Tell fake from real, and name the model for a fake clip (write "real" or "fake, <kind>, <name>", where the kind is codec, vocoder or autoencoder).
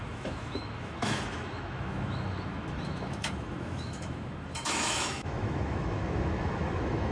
fake, autoencoder, DAC-VAE